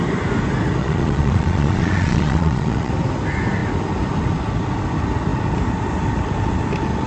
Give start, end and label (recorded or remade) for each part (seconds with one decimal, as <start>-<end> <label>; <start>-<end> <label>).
0.0-0.8 recorded; 0.8-2.9 remade; 2.9-7.1 recorded